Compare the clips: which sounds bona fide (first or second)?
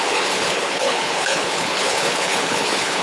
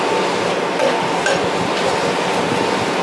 second